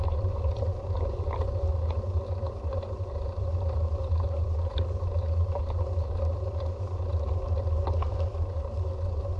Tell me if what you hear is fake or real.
real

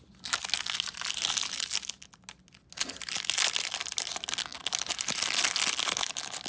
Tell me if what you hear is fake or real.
real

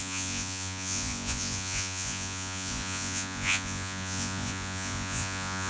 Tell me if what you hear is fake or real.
fake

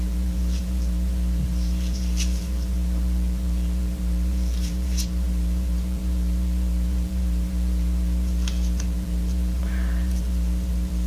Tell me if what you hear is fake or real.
fake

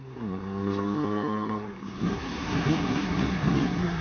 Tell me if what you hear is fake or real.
fake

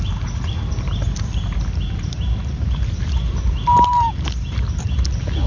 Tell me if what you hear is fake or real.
real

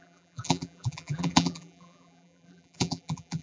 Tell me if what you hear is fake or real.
fake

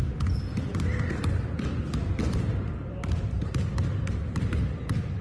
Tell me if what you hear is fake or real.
real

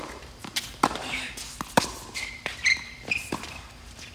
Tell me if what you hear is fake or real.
fake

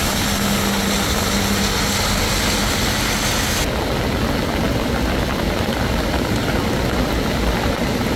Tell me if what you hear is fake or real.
real